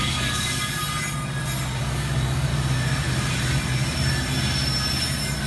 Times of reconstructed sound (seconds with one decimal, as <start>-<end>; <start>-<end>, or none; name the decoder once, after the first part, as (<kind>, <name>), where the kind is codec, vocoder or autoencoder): 0.0-0.8 (codec, DAC); 1.8-2.5